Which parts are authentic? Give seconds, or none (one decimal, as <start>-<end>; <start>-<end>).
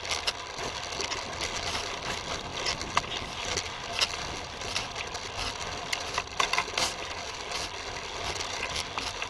0.0-9.3